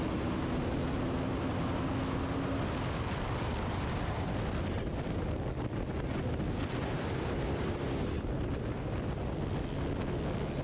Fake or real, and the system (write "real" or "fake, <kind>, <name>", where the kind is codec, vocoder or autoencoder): real